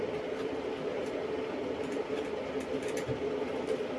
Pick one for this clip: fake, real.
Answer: real